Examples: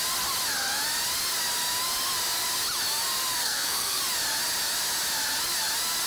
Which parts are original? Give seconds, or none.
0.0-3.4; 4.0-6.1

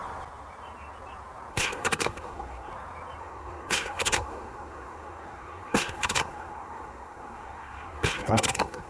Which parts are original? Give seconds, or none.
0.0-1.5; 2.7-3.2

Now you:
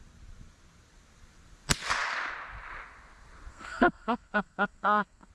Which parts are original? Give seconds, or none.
0.0-3.5

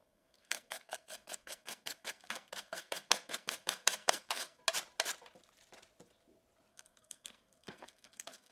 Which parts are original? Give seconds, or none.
4.6-6.7